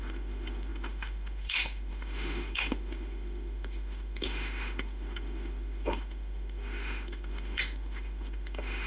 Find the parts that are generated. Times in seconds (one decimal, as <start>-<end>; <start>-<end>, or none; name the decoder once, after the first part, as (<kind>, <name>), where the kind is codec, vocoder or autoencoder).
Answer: 0.0-8.9 (autoencoder, DAC-VAE)